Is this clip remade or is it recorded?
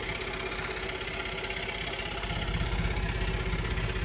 recorded